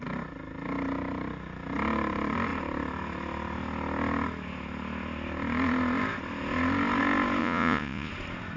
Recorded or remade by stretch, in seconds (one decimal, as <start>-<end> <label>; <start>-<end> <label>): 0.0-7.4 recorded; 7.4-8.1 remade; 8.1-8.6 recorded